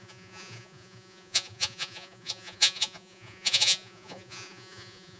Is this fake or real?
fake